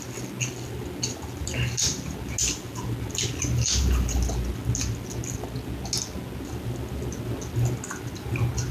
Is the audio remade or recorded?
recorded